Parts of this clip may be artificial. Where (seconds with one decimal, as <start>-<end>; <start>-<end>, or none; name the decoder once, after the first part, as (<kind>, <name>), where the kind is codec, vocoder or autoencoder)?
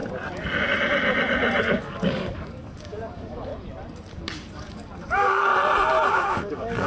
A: 1.6-3.5 (codec, DAC); 4.1-5.5; 6.1-6.9